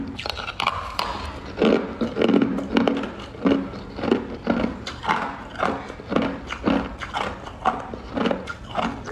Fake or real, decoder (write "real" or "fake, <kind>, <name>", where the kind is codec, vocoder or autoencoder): real